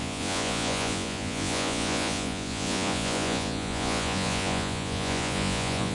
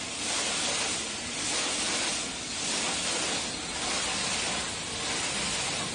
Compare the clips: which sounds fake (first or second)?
first